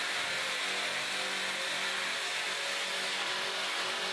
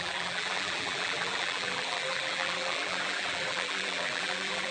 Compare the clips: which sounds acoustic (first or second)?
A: first